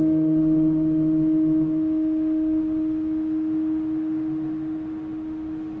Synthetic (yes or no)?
yes